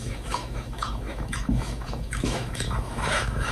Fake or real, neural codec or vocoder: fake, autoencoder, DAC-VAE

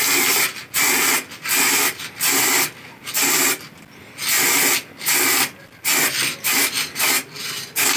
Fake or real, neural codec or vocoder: real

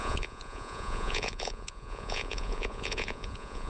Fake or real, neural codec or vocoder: fake, vocoder, Vocos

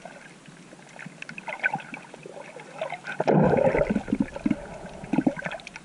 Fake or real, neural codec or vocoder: real